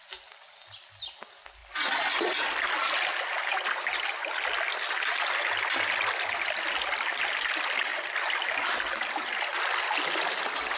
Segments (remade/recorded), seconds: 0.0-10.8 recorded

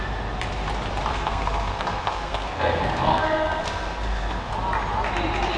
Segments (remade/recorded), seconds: 0.0-1.1 recorded; 1.1-4.5 remade; 4.5-5.6 recorded

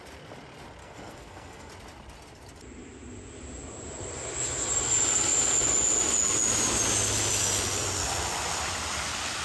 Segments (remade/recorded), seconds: 0.0-0.8 recorded; 0.8-1.7 remade; 1.7-9.4 recorded

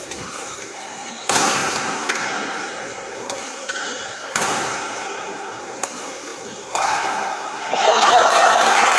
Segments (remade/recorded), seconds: 0.0-9.0 remade

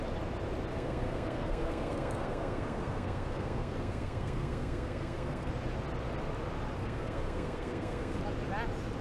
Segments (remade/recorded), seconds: 0.0-0.7 recorded; 0.7-5.5 remade; 5.5-6.8 recorded; 6.8-8.2 remade; 8.2-9.0 recorded

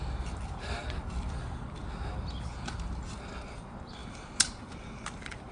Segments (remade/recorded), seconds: 0.0-5.5 recorded

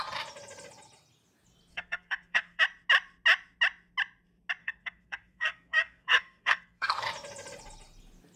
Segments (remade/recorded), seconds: 0.0-1.7 recorded; 1.7-2.6 remade; 2.6-4.6 recorded; 4.6-7.1 remade; 7.1-8.4 recorded

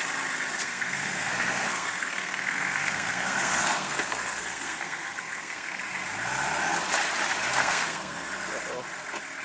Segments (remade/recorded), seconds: 0.0-0.6 recorded; 0.6-5.8 remade; 5.8-7.6 recorded; 7.6-8.3 remade; 8.3-9.4 recorded